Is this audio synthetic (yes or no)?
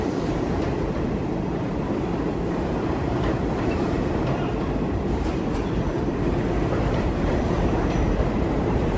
yes